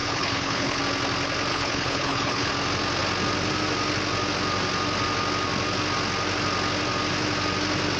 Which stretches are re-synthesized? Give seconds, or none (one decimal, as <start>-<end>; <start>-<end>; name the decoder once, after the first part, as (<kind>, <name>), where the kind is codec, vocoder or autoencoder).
0.0-0.8 (codec, HILCodec); 1.5-2.5